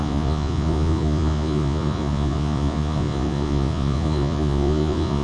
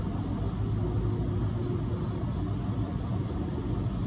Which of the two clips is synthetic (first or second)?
first